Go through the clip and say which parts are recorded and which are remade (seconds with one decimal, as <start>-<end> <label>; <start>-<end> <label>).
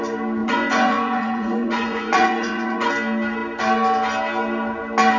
0.0-0.4 recorded; 0.4-2.9 remade; 2.9-5.2 recorded